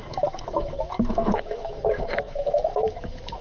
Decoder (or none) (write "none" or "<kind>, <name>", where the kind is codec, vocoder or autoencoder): autoencoder, DAC-VAE